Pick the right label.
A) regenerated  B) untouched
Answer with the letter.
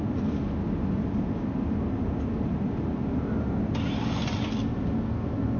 B